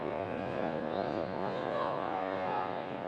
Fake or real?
fake